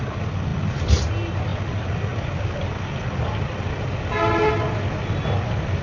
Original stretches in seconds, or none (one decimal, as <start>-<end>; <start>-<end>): 0.0-5.8